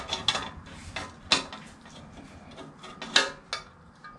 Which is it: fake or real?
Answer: real